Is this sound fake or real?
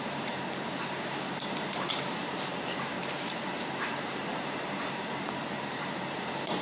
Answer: fake